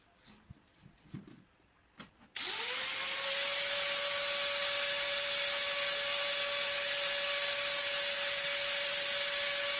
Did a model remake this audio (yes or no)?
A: no